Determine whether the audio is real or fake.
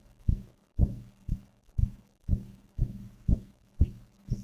fake